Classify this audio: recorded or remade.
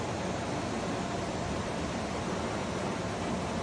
recorded